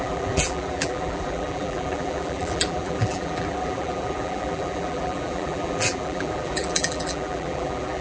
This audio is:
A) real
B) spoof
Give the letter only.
B